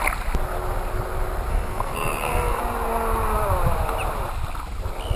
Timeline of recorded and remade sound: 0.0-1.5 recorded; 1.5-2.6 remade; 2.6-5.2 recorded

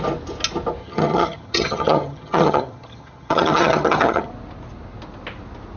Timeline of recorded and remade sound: 0.0-0.8 recorded; 0.8-4.3 remade; 4.3-5.8 recorded

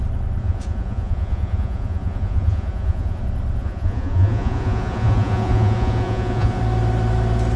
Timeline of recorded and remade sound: 0.0-0.4 recorded; 0.4-3.2 remade; 3.2-3.6 recorded; 3.6-6.6 remade; 6.6-7.6 recorded

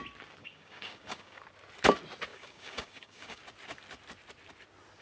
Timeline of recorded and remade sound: 0.0-0.4 recorded; 0.4-1.4 remade; 1.4-2.3 recorded; 2.3-3.4 remade; 3.4-5.0 recorded

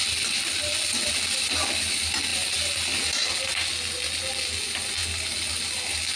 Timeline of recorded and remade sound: 0.0-6.2 recorded

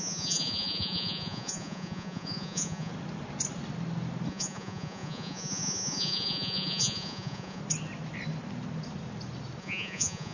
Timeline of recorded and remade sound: 0.0-2.9 remade; 2.9-4.3 recorded; 4.3-7.6 remade; 7.6-9.6 recorded; 9.6-10.3 remade

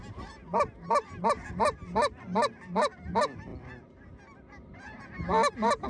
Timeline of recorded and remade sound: 0.0-5.9 recorded